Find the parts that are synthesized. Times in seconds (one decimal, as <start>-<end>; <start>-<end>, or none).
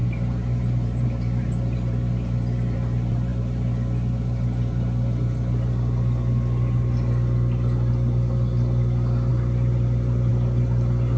none